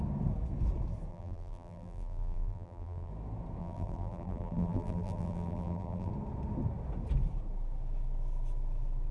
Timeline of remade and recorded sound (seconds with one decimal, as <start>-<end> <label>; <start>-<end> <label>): 0.0-1.1 recorded; 1.1-3.1 remade; 3.1-3.6 recorded; 3.6-6.1 remade; 6.1-9.1 recorded